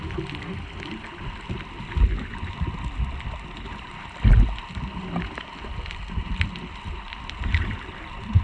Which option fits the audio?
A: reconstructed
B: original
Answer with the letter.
B